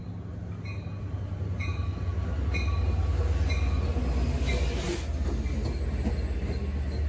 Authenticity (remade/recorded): recorded